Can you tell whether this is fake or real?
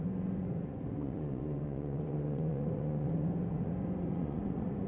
fake